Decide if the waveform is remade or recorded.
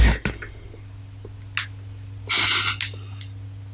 recorded